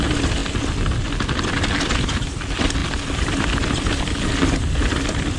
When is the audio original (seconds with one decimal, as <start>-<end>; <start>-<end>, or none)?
0.0-5.4